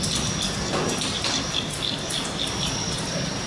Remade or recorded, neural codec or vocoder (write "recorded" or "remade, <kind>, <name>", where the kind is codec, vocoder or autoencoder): recorded